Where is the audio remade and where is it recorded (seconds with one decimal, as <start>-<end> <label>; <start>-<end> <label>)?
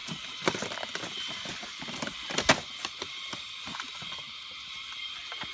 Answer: 0.0-5.5 recorded